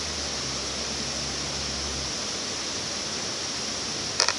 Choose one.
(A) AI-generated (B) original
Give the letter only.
B